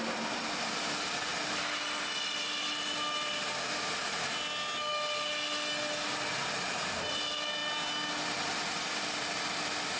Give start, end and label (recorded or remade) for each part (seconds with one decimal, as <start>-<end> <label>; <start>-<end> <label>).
0.0-10.0 recorded